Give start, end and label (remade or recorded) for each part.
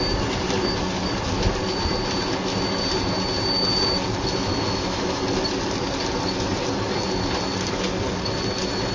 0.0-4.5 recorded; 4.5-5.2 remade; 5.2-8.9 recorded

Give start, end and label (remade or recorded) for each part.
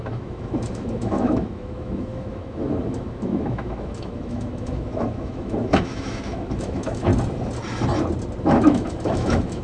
0.0-7.1 remade; 7.1-8.4 recorded; 8.4-9.6 remade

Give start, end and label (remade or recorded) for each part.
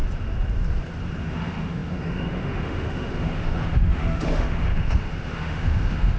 0.0-1.2 recorded; 1.2-6.2 remade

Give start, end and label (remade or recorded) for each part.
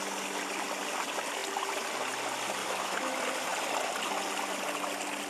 0.0-2.6 recorded; 2.6-3.1 remade; 3.1-5.3 recorded